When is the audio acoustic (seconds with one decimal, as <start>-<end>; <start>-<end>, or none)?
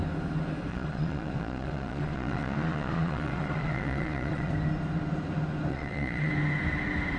0.0-0.7; 4.5-5.7; 6.3-7.2